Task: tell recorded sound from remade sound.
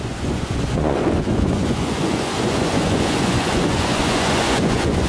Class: remade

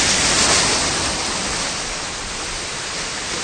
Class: recorded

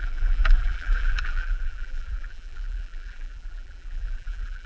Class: remade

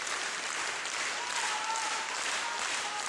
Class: remade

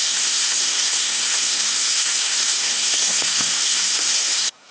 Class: remade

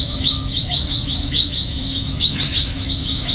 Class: remade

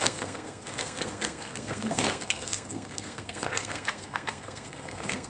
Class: remade